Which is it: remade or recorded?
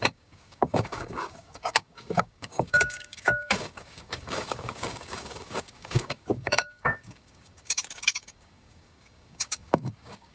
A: remade